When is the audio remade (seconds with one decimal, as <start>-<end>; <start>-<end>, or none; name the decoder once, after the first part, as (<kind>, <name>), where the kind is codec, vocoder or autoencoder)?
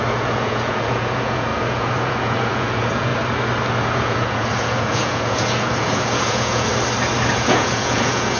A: 0.0-3.1 (vocoder, Vocos); 3.8-6.7; 7.3-8.4